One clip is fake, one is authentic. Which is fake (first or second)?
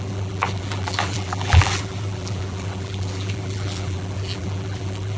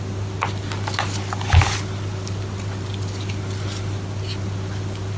first